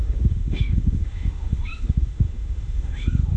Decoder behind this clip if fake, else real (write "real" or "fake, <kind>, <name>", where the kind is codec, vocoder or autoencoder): fake, autoencoder, DAC-VAE